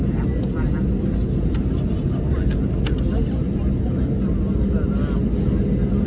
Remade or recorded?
recorded